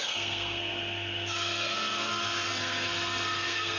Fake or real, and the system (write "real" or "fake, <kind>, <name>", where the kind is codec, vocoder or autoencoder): fake, codec, SNAC